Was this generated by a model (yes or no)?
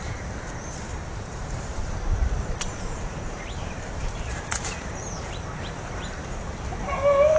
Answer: yes